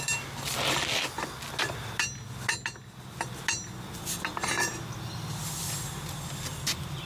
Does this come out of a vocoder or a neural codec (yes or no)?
no